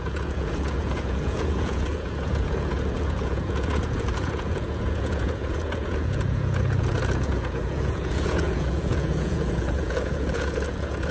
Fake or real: fake